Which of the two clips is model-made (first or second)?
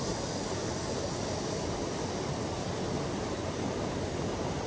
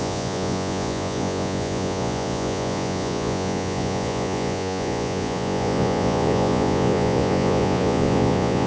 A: second